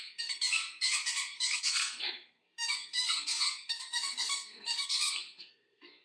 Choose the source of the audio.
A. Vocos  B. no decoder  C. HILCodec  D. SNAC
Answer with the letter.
D